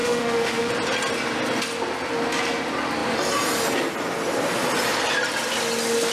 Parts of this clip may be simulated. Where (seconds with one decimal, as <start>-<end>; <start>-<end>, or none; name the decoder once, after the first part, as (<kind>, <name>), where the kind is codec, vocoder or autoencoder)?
0.0-0.7 (autoencoder, DAC-VAE)

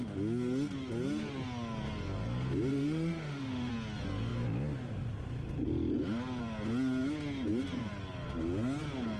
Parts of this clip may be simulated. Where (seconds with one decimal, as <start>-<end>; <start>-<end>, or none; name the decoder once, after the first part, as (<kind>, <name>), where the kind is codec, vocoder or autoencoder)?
2.7-3.7 (autoencoder, DAC-VAE)

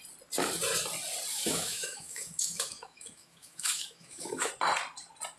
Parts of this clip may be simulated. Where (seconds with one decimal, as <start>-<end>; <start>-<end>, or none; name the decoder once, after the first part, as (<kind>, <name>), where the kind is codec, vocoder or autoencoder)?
1.3-4.5 (autoencoder, DAC-VAE)

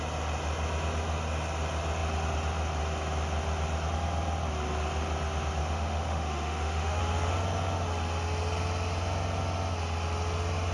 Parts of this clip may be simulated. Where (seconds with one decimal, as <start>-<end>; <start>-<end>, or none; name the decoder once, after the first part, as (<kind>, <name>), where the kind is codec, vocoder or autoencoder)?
5.6-7.0 (autoencoder, DAC-VAE)

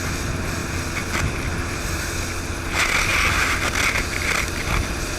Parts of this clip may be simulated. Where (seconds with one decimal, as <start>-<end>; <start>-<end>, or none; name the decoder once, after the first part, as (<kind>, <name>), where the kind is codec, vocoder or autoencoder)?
none